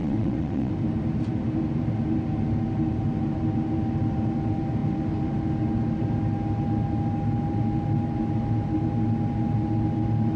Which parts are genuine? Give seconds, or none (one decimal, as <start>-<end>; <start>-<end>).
0.7-10.4